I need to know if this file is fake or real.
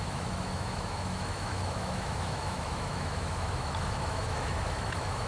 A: fake